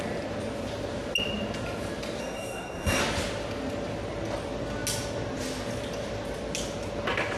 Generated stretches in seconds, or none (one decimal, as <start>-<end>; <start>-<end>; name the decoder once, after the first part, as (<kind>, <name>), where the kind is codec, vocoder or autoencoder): 2.2-3.0 (codec, SNAC)

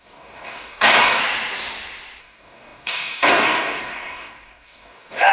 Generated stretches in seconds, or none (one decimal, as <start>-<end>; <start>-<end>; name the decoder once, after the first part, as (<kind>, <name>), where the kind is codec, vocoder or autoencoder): 0.0-1.2 (codec, DAC); 2.2-5.3

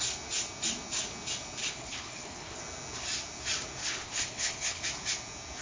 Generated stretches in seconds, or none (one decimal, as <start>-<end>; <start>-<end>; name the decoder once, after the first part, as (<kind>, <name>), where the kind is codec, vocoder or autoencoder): 1.6-2.6 (codec, HILCodec); 3.8-4.8